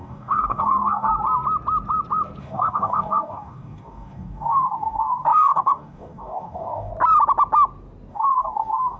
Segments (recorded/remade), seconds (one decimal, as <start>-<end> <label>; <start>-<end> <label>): 0.0-1.1 remade; 1.1-2.4 recorded; 2.4-6.9 remade; 6.9-8.1 recorded; 8.1-9.0 remade